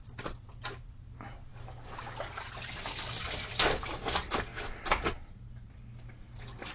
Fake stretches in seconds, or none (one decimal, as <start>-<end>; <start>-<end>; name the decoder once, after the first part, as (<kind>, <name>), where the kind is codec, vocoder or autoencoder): none